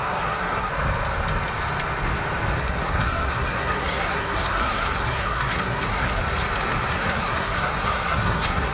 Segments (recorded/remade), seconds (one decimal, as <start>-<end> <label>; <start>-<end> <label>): 0.0-0.7 remade; 0.7-2.6 recorded; 2.6-6.2 remade; 6.2-6.9 recorded; 6.9-8.7 remade